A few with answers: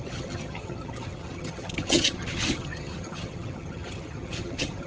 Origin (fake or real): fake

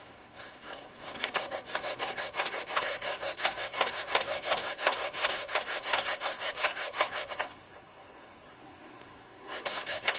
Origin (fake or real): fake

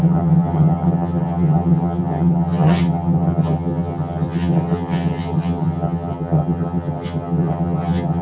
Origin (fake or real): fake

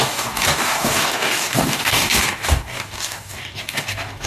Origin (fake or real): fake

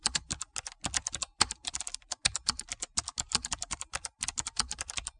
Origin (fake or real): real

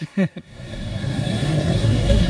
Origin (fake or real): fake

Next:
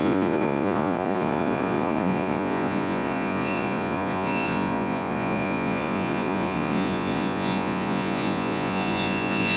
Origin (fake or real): fake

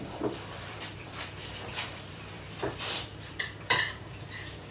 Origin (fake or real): fake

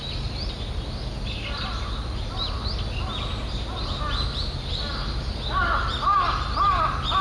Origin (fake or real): real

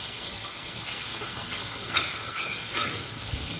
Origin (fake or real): fake